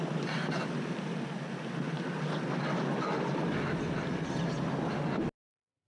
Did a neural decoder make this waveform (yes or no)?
no